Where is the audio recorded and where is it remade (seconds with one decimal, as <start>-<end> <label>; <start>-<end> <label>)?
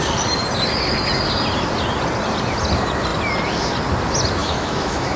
0.0-4.4 recorded; 4.4-5.2 remade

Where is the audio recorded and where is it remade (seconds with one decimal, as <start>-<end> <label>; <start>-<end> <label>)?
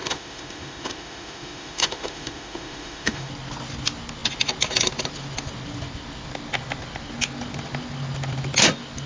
0.0-3.3 remade; 3.3-9.1 recorded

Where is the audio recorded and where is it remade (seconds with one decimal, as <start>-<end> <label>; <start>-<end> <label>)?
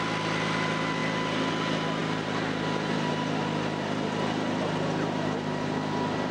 0.0-6.3 recorded